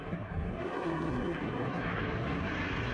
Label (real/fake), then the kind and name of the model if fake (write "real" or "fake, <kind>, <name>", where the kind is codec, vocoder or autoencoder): fake, codec, SNAC